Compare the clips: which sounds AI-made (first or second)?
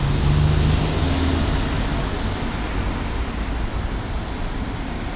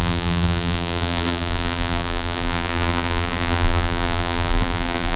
second